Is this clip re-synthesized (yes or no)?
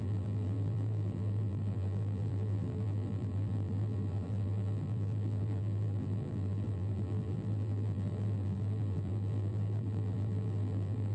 yes